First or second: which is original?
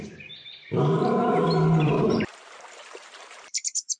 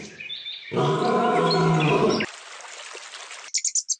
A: second